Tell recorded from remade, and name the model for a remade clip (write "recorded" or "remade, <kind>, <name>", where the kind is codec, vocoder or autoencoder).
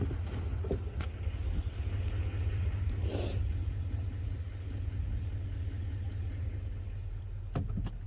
recorded